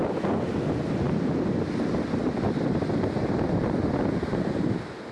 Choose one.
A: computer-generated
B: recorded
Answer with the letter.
B